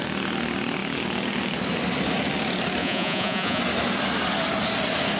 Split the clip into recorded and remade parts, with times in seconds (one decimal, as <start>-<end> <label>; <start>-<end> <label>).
0.0-2.8 recorded; 2.8-3.6 remade; 3.6-5.2 recorded